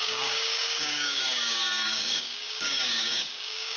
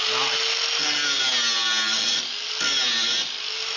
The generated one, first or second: first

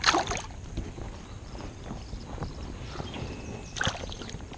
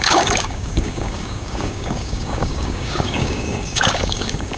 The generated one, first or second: second